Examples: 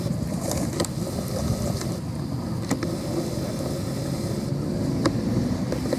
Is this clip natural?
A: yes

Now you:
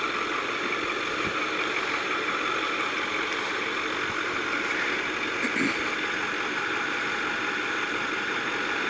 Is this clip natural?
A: yes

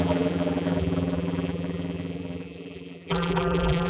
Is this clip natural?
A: no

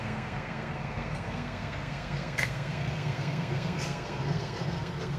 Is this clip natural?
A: no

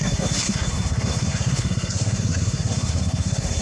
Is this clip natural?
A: no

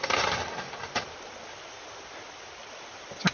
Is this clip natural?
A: yes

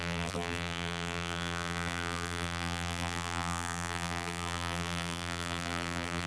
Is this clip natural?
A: no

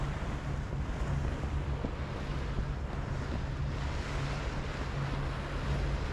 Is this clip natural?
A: yes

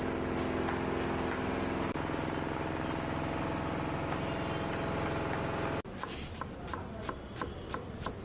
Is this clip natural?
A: yes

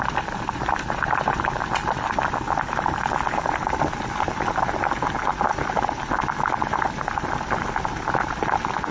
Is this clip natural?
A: yes